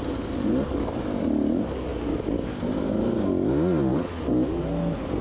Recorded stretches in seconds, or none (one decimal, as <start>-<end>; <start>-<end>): 0.0-5.2